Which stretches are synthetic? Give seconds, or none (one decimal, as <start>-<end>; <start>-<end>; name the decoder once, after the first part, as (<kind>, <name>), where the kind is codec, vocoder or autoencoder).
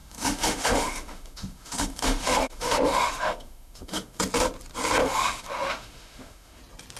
0.0-4.2 (autoencoder, DAC-VAE); 5.0-6.6